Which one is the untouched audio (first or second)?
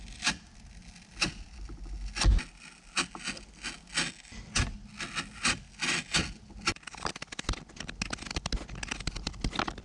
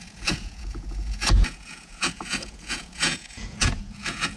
first